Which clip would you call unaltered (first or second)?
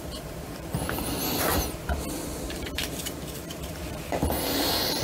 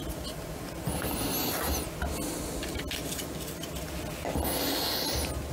second